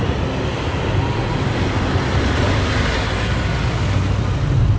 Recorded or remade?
recorded